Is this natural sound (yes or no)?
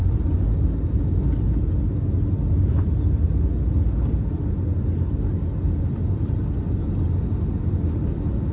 yes